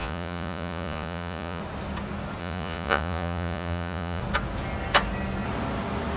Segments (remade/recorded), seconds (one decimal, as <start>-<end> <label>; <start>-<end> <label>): 0.0-1.6 remade; 1.6-2.4 recorded; 2.4-4.2 remade; 4.2-6.2 recorded